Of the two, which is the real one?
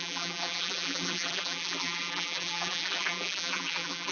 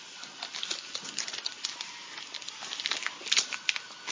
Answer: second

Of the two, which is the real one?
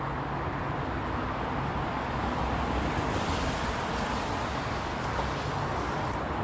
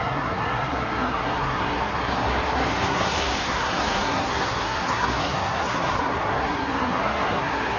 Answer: first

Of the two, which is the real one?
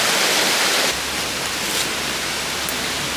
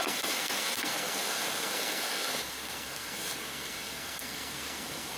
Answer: first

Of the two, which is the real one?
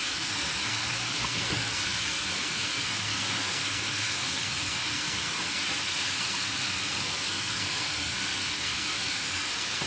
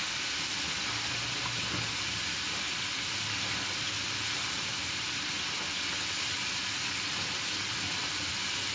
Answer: second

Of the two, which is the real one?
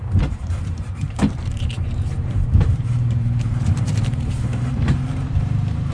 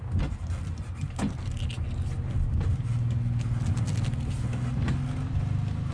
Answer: second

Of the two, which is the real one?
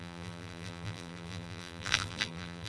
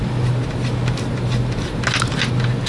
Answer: second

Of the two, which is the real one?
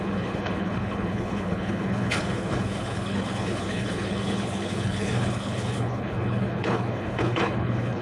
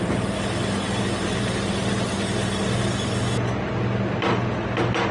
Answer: second